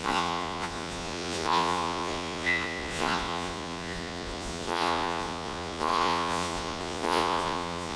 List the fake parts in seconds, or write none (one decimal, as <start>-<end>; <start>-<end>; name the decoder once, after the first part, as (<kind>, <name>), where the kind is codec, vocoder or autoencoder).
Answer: 0.0-8.0 (vocoder, Vocos)